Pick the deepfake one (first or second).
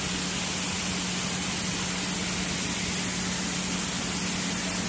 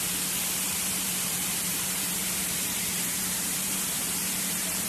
second